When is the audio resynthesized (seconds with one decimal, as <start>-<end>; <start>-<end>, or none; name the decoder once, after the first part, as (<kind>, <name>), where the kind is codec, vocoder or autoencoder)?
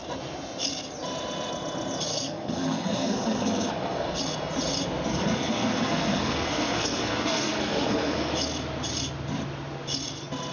2.1-4.2 (codec, SNAC); 5.1-8.3